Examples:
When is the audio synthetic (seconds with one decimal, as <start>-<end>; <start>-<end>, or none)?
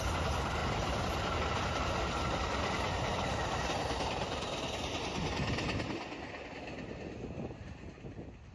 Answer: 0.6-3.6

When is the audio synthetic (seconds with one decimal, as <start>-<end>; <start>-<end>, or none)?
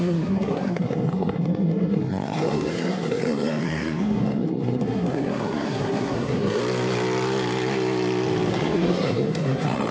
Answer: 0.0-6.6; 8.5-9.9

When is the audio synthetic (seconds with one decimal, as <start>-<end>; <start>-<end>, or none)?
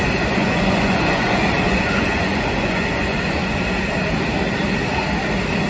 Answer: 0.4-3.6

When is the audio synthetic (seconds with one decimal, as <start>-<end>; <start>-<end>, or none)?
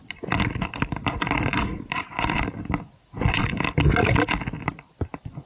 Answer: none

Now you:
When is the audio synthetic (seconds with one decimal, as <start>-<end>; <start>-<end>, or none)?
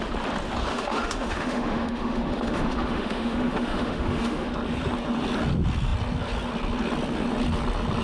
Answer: 0.7-4.5